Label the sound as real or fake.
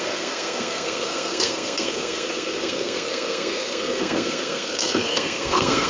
fake